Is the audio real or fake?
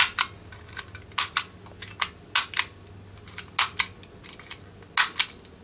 real